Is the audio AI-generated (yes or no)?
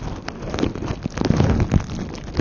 no